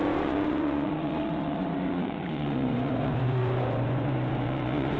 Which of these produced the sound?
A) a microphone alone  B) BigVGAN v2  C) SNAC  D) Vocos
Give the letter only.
D